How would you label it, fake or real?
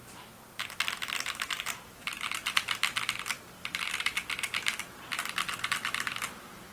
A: real